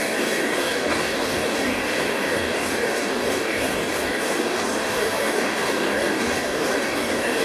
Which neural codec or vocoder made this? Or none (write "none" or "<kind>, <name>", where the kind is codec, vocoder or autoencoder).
codec, DAC